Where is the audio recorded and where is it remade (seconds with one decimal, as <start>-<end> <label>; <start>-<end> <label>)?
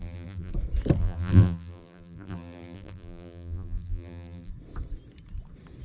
0.0-0.5 remade; 0.5-1.0 recorded; 1.0-4.5 remade; 4.5-5.8 recorded